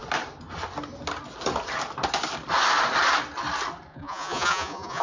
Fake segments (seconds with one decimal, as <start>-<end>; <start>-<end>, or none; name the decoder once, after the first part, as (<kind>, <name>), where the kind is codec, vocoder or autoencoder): 3.9-5.0 (vocoder, Vocos)